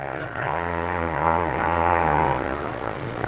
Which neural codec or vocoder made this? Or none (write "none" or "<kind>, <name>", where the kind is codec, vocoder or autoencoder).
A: vocoder, Vocos